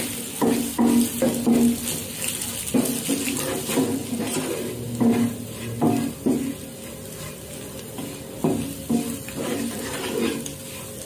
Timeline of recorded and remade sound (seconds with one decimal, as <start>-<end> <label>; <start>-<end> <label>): 0.0-11.1 recorded